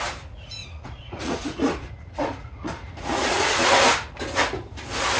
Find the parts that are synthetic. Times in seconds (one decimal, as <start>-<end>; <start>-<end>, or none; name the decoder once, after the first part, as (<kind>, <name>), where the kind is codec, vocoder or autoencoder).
0.6-3.7 (vocoder, Vocos)